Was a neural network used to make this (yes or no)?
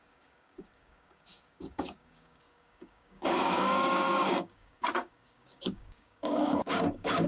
yes